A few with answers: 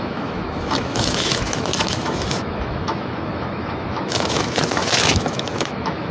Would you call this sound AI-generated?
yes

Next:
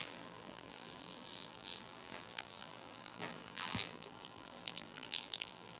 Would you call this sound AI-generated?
yes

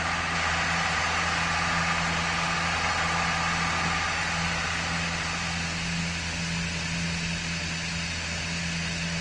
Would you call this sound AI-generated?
no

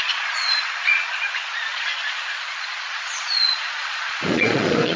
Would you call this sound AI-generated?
yes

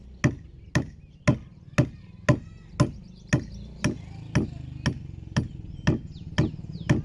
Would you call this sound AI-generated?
no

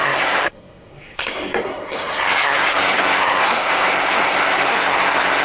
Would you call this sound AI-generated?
yes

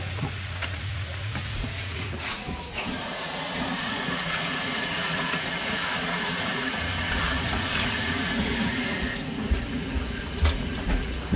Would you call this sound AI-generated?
yes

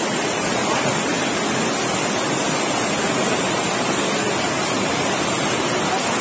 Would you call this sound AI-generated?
no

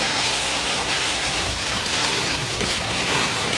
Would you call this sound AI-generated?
yes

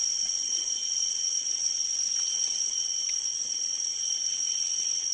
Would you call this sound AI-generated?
yes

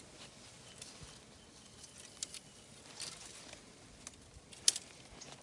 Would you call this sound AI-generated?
no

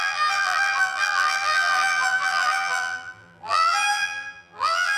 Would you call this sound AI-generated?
yes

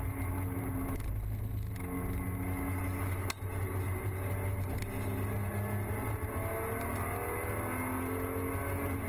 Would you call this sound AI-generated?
no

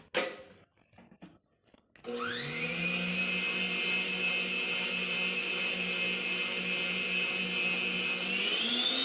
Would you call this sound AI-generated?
no